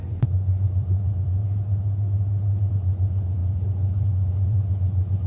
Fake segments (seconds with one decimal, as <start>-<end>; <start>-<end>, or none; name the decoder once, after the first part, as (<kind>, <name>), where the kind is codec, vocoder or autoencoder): 0.0-1.4 (vocoder, Vocos); 2.7-5.3